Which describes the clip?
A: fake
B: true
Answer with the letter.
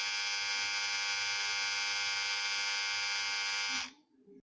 B